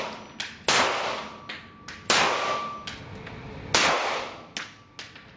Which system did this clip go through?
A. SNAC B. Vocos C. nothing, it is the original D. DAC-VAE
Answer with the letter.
C